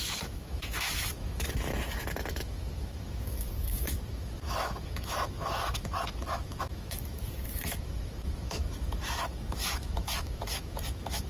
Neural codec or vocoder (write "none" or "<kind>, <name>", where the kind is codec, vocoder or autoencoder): autoencoder, DAC-VAE